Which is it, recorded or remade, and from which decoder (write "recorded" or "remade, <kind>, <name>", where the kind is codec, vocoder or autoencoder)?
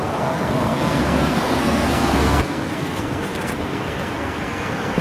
remade, codec, SNAC